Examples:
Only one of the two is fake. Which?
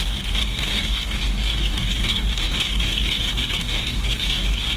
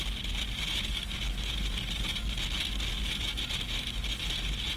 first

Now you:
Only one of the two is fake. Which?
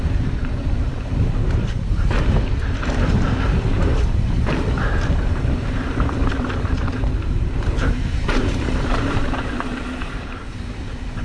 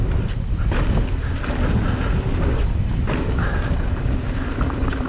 first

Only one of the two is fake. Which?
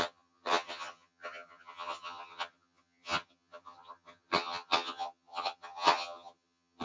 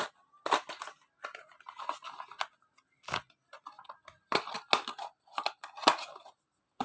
first